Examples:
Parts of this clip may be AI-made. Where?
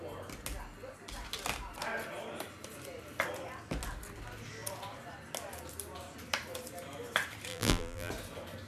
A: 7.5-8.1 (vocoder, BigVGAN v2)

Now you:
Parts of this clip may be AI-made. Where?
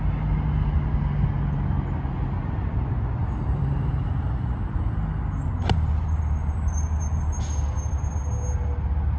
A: 3.2-3.9 (vocoder, BigVGAN v2)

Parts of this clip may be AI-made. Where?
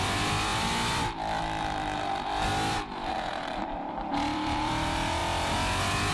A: 0.0-0.5 (vocoder, BigVGAN v2); 2.0-2.5; 3.3-5.2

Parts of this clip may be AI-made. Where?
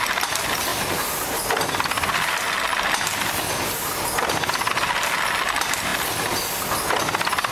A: none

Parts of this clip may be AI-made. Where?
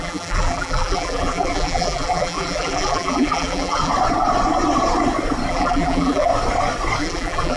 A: 0.0-3.9 (vocoder, BigVGAN v2); 5.5-6.3; 7.0-7.6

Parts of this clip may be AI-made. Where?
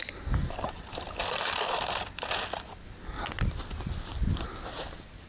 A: 0.4-3.0 (vocoder, BigVGAN v2)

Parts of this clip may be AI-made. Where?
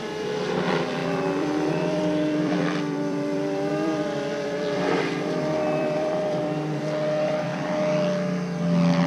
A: 0.0-7.5 (vocoder, BigVGAN v2)